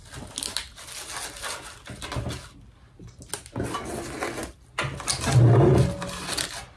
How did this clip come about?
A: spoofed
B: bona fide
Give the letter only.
B